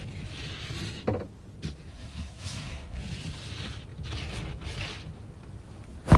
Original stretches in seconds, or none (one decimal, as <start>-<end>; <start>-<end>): 0.0-1.9; 3.0-6.2